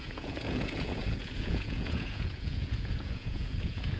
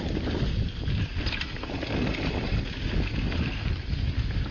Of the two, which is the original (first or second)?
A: second